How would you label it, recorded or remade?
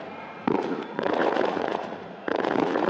remade